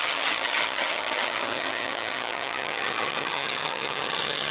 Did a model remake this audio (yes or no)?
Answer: yes